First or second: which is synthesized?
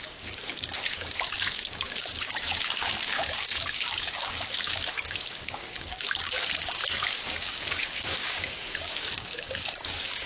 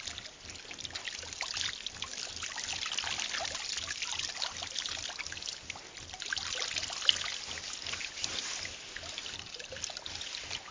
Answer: first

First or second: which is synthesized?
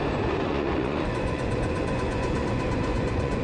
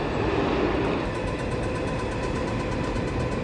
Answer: first